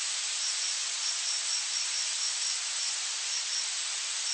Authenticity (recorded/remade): recorded